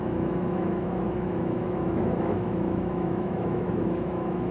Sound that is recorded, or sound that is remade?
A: remade